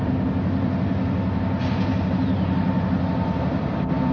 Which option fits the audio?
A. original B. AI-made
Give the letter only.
A